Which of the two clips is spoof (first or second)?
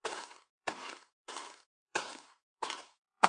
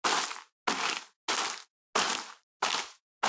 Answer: first